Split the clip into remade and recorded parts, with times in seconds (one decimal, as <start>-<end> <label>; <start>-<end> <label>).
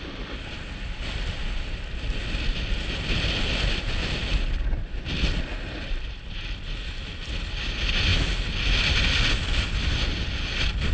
0.0-10.9 recorded